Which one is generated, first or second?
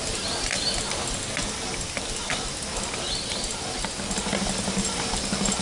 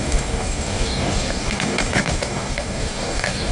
second